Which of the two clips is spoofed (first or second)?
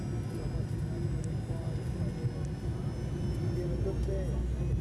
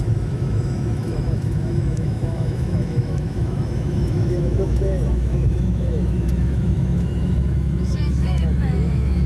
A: second